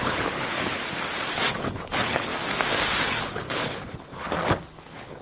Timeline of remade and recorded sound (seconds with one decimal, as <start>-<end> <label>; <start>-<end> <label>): 0.0-0.8 remade; 0.8-1.5 recorded; 1.5-2.3 remade; 2.3-3.0 recorded; 3.0-4.1 remade; 4.1-4.7 recorded; 4.7-5.2 remade